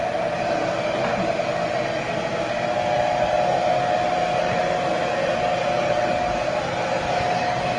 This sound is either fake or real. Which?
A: real